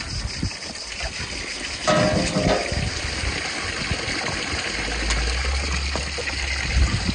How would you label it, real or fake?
real